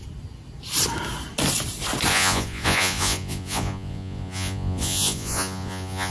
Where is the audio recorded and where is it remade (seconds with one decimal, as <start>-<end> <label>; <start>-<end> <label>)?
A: 0.0-2.1 recorded; 2.1-6.1 remade